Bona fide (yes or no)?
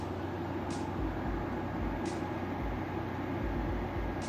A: yes